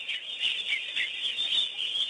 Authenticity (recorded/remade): recorded